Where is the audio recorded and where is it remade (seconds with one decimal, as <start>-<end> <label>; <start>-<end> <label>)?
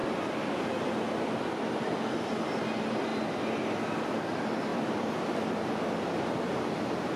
0.0-3.1 recorded; 3.1-4.2 remade; 4.2-4.7 recorded; 4.7-6.5 remade; 6.5-7.2 recorded